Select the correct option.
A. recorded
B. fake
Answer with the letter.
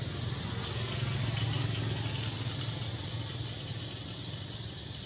A